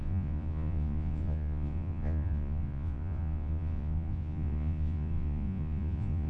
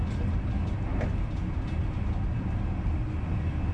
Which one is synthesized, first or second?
first